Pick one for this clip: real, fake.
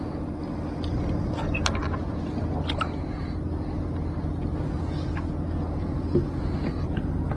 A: real